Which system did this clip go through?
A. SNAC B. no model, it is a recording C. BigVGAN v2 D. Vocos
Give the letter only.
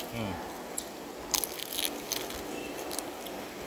B